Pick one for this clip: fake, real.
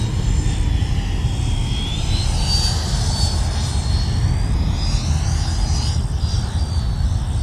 real